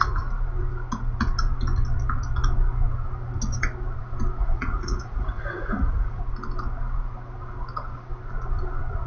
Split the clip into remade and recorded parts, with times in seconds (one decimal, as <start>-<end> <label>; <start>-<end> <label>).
0.0-4.4 recorded; 4.4-6.2 remade; 6.2-9.1 recorded